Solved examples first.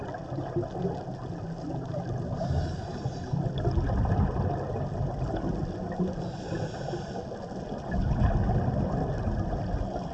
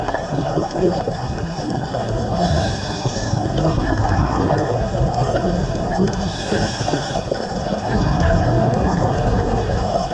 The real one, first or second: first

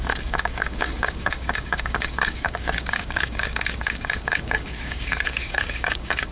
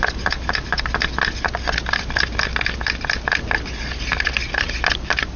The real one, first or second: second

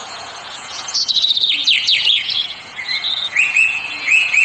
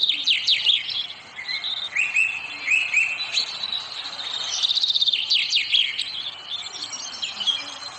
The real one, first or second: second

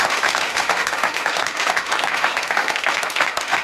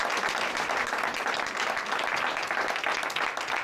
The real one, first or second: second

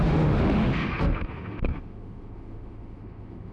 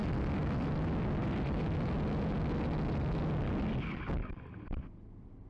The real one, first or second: second